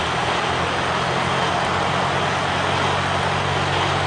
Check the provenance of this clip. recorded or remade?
recorded